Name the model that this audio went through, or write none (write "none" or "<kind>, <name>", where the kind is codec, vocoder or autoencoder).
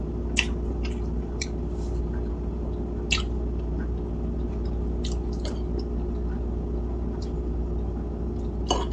none